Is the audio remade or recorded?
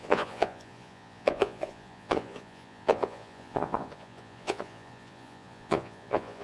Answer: remade